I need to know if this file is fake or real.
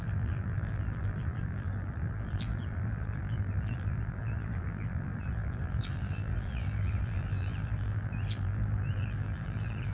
fake